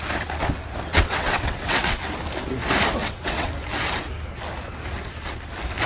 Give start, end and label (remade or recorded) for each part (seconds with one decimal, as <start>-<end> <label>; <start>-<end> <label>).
0.0-0.9 recorded; 0.9-2.0 remade; 2.0-3.0 recorded; 3.0-3.5 remade; 3.5-5.9 recorded